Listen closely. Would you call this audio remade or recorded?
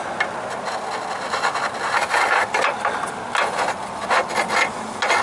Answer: recorded